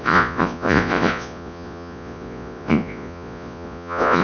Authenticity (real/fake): fake